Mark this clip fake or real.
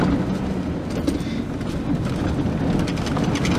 real